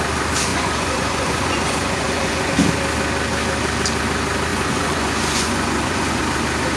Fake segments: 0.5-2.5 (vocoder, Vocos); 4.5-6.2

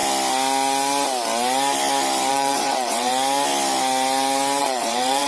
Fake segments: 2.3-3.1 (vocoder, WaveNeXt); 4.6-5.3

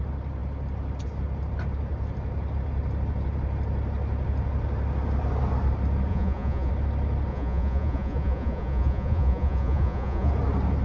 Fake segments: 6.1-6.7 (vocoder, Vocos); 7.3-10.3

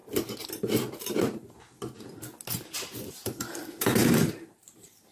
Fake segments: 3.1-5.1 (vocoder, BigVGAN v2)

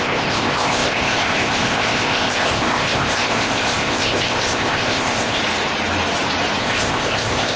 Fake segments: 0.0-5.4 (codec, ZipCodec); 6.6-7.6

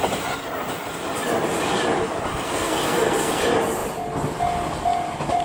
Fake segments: 2.3-3.4 (codec, SNAC)

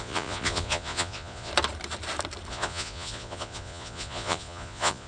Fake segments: 0.0-1.5 (vocoder, Vocos); 2.5-5.1

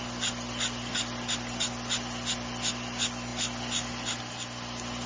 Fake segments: none